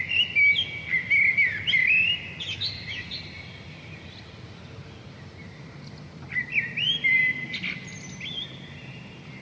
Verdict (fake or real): real